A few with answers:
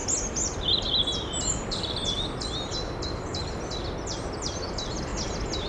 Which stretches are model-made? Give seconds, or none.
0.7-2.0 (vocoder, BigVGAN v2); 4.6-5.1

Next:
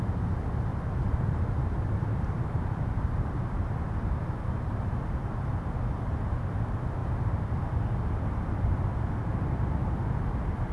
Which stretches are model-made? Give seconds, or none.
0.7-5.8 (vocoder, BigVGAN v2); 7.0-7.7